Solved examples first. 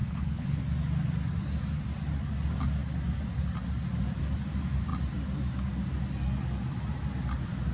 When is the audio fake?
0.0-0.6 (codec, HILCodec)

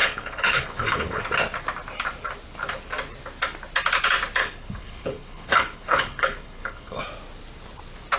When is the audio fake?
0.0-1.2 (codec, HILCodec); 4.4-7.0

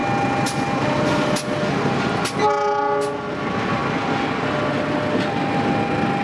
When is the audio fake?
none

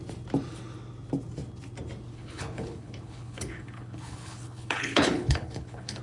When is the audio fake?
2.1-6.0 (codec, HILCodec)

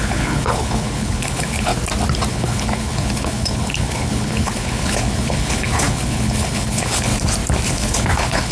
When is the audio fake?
0.0-1.7 (codec, HILCodec); 2.3-7.1; 7.7-8.5

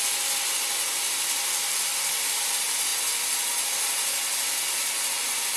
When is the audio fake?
none

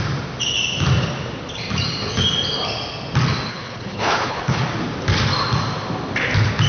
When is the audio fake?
3.5-4.6 (codec, HILCodec)